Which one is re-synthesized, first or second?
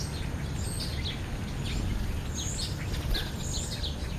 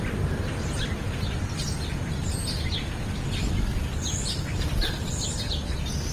second